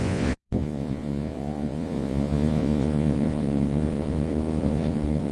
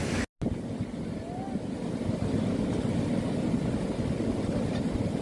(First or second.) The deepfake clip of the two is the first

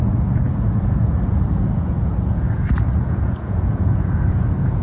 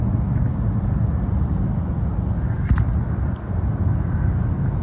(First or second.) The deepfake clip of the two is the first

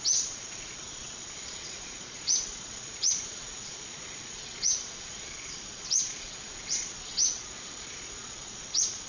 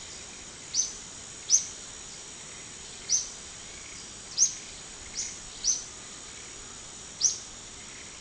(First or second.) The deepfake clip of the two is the first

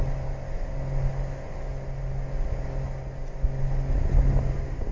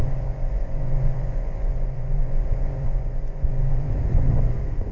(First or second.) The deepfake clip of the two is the second